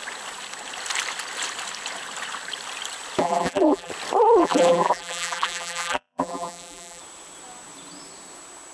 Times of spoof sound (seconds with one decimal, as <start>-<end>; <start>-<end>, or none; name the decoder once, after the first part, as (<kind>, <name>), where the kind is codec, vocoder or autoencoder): 3.2-3.9 (vocoder, BigVGAN v2); 4.4-7.0